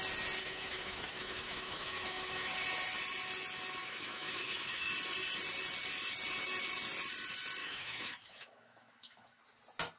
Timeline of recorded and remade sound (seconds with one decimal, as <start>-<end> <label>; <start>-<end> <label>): 0.0-0.4 recorded; 0.4-2.5 remade; 2.5-3.8 recorded; 3.8-4.9 remade; 4.9-7.6 recorded; 7.6-9.4 remade; 9.4-10.0 recorded